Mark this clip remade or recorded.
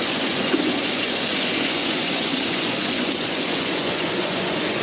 remade